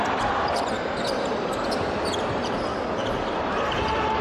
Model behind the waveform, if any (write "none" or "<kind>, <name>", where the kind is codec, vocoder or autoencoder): none